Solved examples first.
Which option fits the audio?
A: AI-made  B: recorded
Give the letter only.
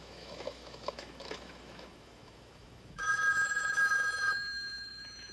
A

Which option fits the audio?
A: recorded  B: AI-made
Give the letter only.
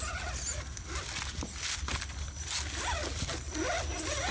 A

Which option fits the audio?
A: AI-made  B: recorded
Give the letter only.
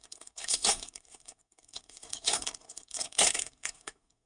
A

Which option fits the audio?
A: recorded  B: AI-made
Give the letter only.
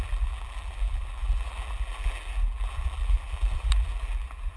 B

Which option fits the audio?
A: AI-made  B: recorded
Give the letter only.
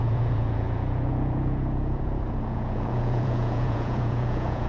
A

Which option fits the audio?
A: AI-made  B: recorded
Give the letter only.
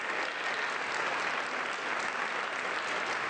B